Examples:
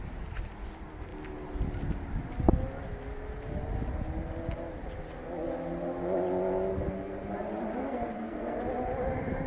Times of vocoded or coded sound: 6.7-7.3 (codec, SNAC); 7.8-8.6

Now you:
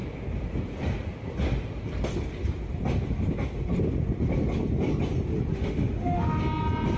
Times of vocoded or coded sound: 5.5-6.4 (autoencoder, DAC-VAE)

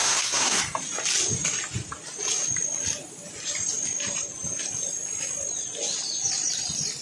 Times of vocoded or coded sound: 0.0-0.6 (codec, SNAC)

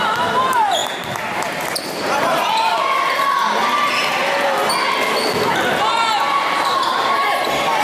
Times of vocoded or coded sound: none

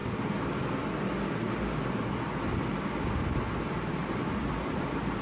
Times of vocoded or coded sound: 4.0-5.2 (vocoder, BigVGAN v2)

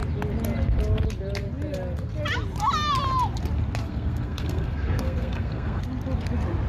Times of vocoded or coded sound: 3.8-5.8 (codec, SNAC)

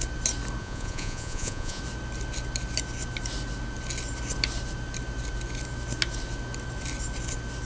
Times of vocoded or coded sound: 0.6-1.8 (vocoder, Vocos)

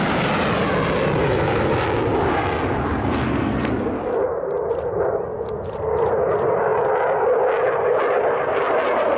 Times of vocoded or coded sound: 3.2-3.7 (codec, SNAC)